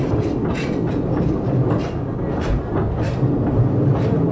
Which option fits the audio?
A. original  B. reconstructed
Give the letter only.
A